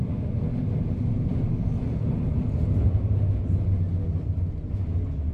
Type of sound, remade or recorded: recorded